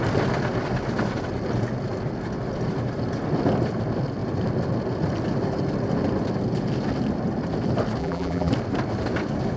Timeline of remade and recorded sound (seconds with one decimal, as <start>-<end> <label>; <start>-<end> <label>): 0.0-8.0 recorded; 8.0-8.5 remade; 8.5-9.6 recorded